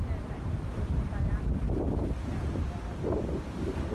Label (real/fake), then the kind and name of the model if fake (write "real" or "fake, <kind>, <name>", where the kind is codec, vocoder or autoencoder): real